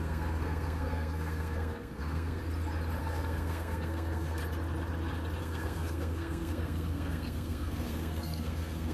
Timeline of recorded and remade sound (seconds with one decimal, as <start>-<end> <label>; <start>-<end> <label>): 0.0-2.4 remade; 2.4-3.0 recorded; 3.0-4.4 remade; 4.4-5.4 recorded; 5.4-8.9 remade